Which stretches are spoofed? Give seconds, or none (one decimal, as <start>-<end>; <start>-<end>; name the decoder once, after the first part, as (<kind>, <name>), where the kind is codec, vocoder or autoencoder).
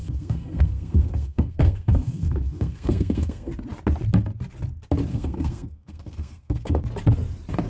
0.0-3.5 (codec, SNAC); 5.1-6.8